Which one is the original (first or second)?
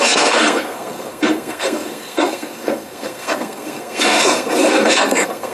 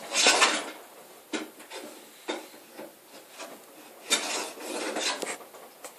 second